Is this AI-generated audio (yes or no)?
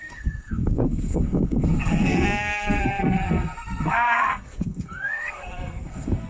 yes